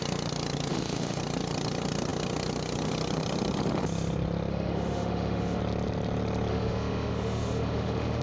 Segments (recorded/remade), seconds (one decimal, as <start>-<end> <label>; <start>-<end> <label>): 0.0-0.7 recorded; 0.7-1.2 remade; 1.2-4.5 recorded; 4.5-5.6 remade; 5.6-6.5 recorded; 6.5-8.2 remade